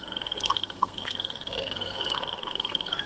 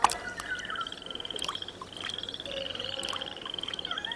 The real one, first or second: second